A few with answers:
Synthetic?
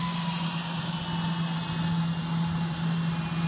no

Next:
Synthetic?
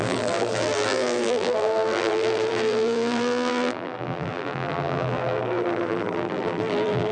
yes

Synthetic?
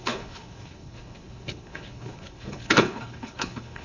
yes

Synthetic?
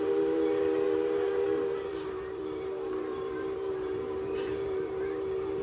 yes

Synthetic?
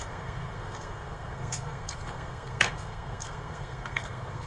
yes